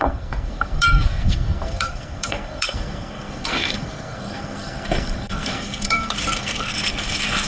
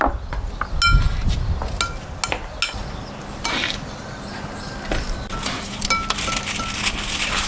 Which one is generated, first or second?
first